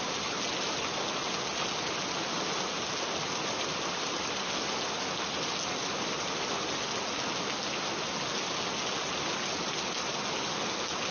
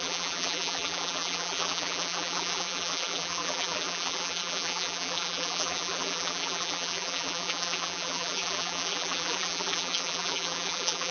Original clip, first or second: first